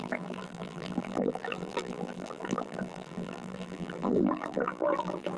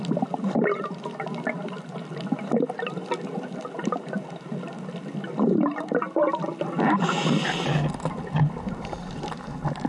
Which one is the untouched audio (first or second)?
second